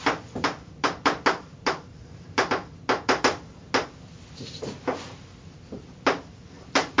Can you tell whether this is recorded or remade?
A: recorded